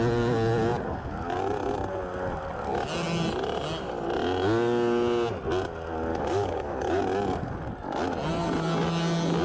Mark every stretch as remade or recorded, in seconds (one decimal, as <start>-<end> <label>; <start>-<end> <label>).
0.0-6.1 recorded; 6.1-7.0 remade; 7.0-9.4 recorded